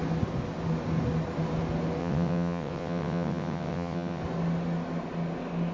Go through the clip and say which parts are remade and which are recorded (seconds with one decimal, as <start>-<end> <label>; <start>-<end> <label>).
0.0-2.0 recorded; 2.0-4.2 remade; 4.2-5.7 recorded